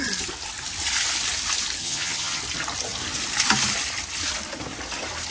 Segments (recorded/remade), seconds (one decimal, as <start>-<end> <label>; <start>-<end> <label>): 0.0-1.8 recorded; 1.8-2.4 remade; 2.4-5.3 recorded